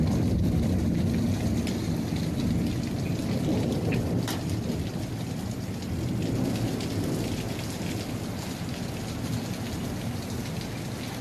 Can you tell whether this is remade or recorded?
recorded